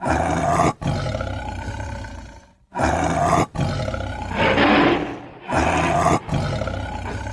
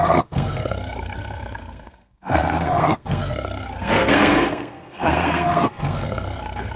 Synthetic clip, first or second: second